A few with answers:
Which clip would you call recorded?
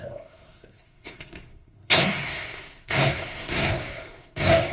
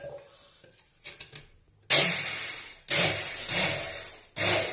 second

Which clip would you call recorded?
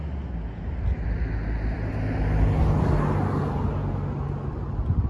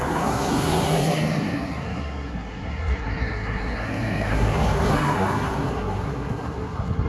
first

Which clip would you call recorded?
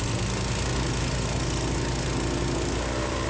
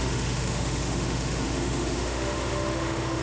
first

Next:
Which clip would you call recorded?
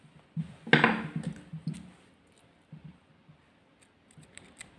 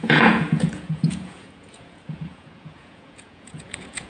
first